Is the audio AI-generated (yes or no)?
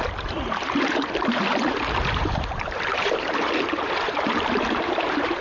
yes